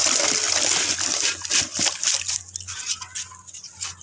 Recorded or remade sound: recorded